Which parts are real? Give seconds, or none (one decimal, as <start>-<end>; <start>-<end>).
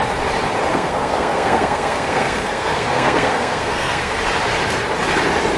0.0-0.7; 4.1-5.6